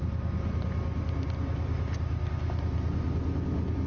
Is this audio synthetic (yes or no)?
no